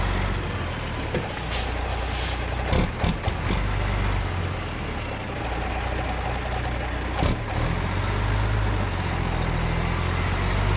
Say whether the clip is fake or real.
real